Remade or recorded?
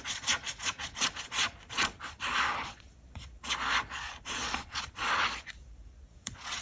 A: remade